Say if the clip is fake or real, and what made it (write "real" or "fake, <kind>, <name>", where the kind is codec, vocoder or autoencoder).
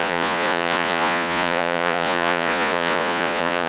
fake, vocoder, Vocos